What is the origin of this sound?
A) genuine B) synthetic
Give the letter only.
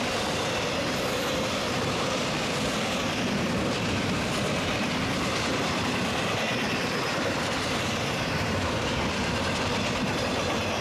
B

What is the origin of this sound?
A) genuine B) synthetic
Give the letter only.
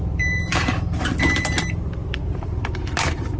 B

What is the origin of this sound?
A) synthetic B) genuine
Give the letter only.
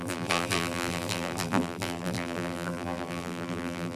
A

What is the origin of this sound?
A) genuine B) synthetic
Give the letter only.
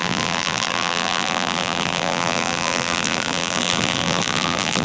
B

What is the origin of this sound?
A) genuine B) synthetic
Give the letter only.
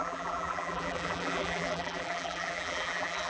B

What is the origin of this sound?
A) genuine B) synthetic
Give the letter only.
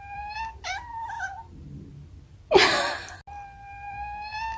A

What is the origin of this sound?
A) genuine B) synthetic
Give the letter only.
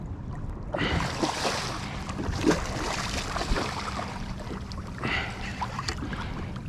B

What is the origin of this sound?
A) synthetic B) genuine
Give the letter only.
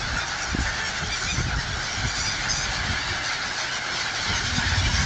B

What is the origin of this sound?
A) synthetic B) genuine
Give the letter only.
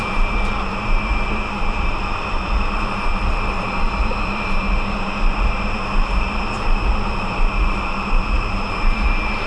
A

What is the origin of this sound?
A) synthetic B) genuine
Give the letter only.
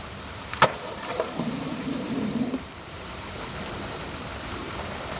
A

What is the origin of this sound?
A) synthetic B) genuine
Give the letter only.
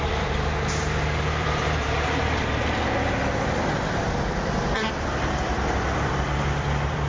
A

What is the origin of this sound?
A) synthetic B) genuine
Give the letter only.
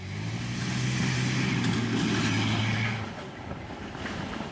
B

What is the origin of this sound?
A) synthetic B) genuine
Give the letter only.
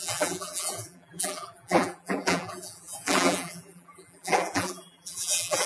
A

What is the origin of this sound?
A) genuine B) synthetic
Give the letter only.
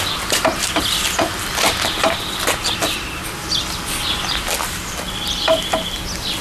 A